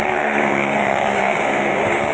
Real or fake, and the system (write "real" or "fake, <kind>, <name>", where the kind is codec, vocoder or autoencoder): fake, codec, DAC